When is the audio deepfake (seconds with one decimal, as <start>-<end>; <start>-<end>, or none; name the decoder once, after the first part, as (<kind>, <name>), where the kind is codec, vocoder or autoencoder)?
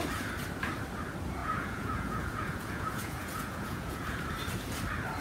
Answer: 1.4-4.2 (vocoder, Vocos)